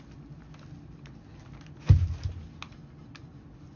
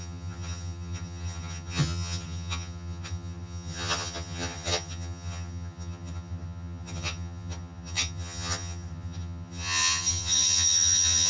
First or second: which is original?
first